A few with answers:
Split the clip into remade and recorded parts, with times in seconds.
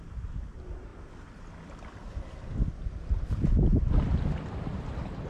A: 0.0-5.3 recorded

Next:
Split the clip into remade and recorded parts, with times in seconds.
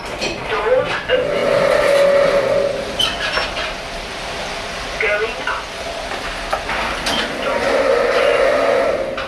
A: 0.0-9.3 recorded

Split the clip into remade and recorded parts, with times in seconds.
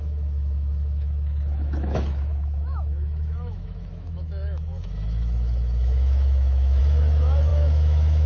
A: 0.0-8.3 remade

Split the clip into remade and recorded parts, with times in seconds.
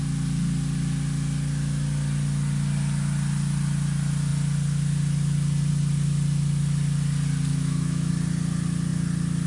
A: 0.0-7.5 recorded; 7.5-8.1 remade; 8.1-9.5 recorded